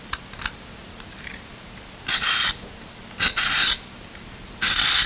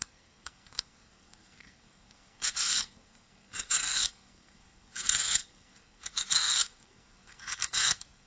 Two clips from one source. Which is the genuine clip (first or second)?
first